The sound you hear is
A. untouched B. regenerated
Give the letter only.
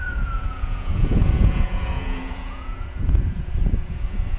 B